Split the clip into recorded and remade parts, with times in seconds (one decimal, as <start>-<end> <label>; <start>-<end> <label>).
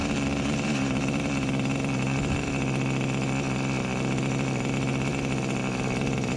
0.0-2.5 remade; 2.5-6.4 recorded